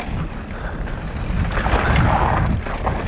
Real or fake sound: real